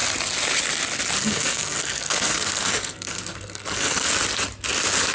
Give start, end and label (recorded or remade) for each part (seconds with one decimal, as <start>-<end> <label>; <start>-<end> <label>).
0.0-1.2 recorded; 1.2-4.1 remade; 4.1-5.1 recorded